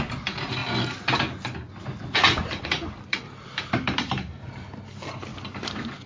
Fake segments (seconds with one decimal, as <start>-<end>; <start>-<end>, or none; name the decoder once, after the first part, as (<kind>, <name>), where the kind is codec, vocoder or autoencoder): 0.0-0.6 (vocoder, BigVGAN v2); 2.6-6.1